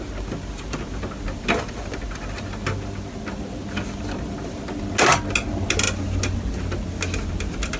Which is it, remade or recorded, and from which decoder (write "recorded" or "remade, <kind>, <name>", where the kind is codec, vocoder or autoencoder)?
recorded